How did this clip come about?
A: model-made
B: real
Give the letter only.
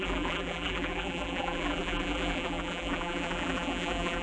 A